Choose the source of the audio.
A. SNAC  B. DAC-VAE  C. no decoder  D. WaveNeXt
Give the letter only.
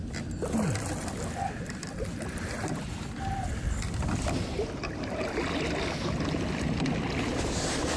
C